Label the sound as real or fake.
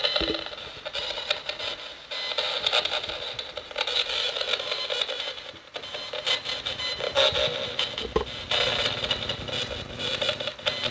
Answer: real